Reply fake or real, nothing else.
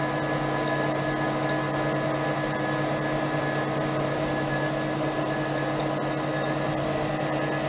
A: real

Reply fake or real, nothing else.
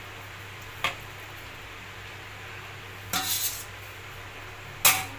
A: real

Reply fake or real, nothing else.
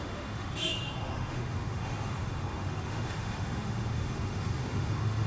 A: fake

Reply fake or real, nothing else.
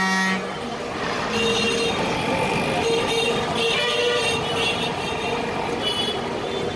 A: real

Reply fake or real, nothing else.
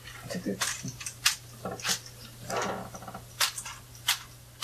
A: real